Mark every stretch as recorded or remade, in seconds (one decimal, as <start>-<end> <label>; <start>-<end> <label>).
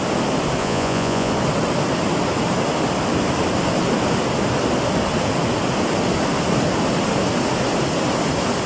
0.0-0.6 recorded; 0.6-1.3 remade; 1.3-8.7 recorded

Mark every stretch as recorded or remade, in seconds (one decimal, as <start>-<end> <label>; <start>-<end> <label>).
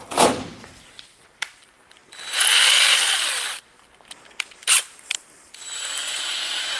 0.0-6.0 recorded; 6.0-6.8 remade